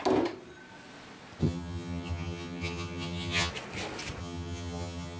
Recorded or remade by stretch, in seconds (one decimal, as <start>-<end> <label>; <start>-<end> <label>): 0.0-1.4 recorded; 1.4-3.5 remade; 3.5-4.2 recorded; 4.2-5.2 remade